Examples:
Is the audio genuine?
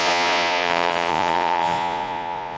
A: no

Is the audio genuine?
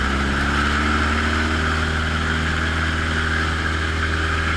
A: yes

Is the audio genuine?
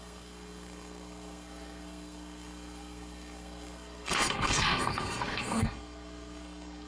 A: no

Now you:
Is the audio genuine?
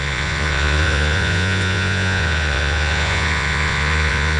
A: no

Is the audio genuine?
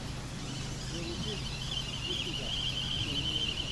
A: yes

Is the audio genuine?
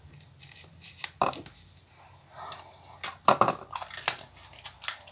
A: yes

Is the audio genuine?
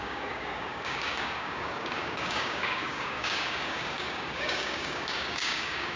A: no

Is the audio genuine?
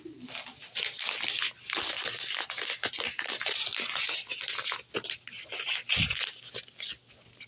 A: yes